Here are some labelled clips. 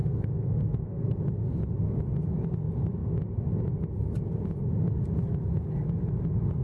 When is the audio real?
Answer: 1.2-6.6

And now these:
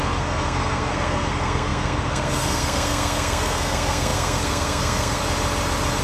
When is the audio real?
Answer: 5.2-6.0

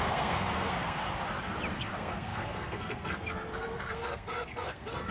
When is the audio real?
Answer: 1.0-1.7

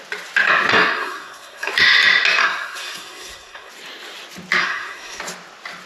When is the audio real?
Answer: 0.0-0.7; 1.7-2.4; 3.7-4.6; 5.2-5.9